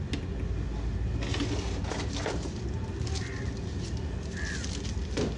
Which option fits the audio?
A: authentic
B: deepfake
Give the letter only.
A